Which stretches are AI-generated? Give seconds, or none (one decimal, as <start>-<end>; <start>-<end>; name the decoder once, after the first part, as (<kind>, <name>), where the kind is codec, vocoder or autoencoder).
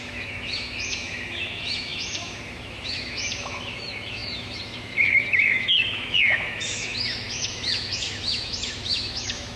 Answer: 0.0-9.6 (autoencoder, DAC-VAE)